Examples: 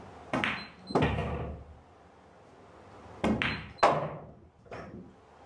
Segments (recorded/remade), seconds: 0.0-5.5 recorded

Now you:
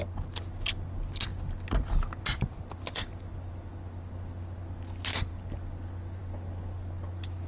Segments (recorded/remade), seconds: 0.0-7.5 recorded

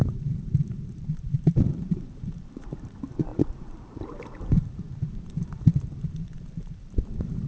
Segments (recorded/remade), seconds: 0.0-7.5 remade

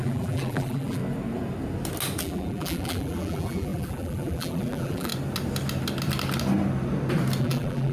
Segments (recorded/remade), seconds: 0.0-1.0 remade; 1.0-2.2 recorded; 2.2-5.1 remade; 5.1-7.4 recorded; 7.4-7.9 remade

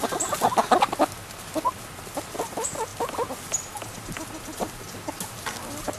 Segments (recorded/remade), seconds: 0.0-6.0 recorded

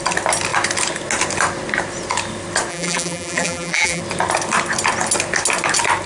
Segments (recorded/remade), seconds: 0.0-2.7 recorded; 2.7-4.0 remade; 4.0-6.1 recorded

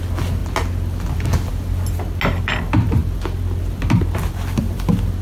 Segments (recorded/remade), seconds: 0.0-5.2 recorded